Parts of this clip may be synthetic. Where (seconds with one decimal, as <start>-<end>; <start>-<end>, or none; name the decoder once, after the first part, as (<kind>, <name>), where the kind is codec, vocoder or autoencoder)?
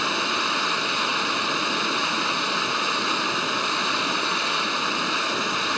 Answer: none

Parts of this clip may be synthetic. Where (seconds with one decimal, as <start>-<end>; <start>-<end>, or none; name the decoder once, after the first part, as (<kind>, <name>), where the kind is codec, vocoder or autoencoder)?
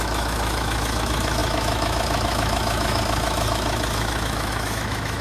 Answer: 0.0-5.2 (autoencoder, DAC-VAE)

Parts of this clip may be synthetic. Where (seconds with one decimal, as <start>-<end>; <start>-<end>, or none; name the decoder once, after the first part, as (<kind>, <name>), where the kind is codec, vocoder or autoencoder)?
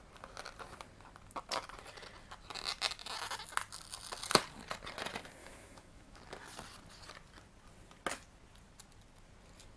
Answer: 5.4-6.2 (autoencoder, DAC-VAE)